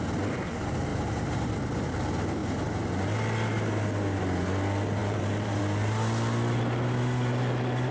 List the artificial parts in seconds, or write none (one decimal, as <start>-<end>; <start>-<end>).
0.9-1.5; 5.0-5.6